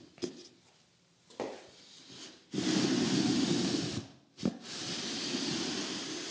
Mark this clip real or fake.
real